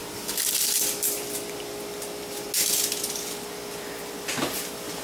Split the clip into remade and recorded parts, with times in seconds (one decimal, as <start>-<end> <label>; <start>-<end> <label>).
0.0-5.0 recorded